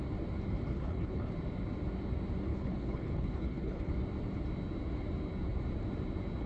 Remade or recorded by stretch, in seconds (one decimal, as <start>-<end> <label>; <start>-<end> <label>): 0.0-0.7 recorded; 0.7-1.3 remade; 1.3-2.5 recorded; 2.5-3.9 remade; 3.9-6.5 recorded

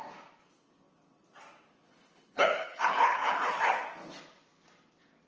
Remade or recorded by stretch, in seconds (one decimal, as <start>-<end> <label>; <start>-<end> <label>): 0.0-1.9 recorded; 1.9-3.7 remade; 3.7-5.3 recorded

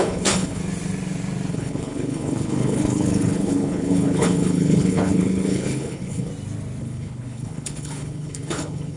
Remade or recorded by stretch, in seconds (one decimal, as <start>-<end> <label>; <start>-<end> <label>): 0.0-0.6 remade; 0.6-1.5 recorded; 1.5-6.3 remade; 6.3-6.8 recorded; 6.8-9.0 remade

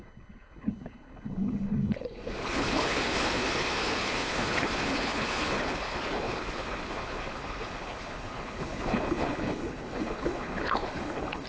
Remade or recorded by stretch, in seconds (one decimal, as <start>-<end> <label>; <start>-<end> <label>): 0.0-11.5 remade

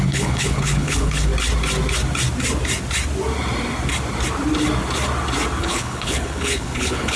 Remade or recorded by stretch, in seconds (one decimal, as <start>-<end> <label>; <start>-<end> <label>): 0.0-1.3 remade; 1.3-5.6 recorded; 5.6-7.2 remade

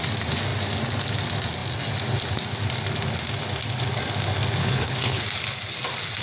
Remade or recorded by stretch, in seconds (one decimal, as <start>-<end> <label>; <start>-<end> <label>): 0.0-4.6 recorded; 4.6-5.2 remade; 5.2-6.2 recorded